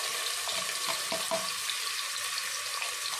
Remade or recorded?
recorded